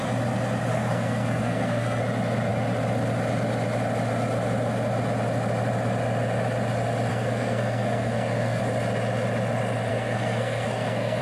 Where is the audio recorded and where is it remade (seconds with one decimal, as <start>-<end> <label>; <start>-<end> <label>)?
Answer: 0.0-0.7 recorded; 0.7-2.0 remade; 2.0-7.1 recorded; 7.1-8.6 remade; 8.6-9.9 recorded; 9.9-11.2 remade